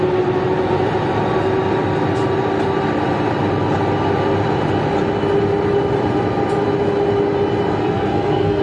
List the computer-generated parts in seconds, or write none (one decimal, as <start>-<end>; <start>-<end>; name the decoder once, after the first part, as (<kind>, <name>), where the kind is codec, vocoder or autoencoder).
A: 7.8-8.6 (codec, SNAC)